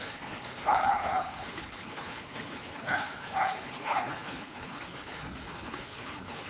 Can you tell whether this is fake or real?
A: fake